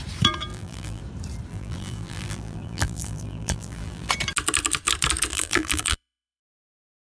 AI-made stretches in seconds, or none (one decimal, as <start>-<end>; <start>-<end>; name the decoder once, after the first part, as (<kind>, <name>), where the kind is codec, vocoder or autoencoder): 0.5-1.0 (vocoder, BigVGAN v2); 1.5-4.1; 5.3-6.4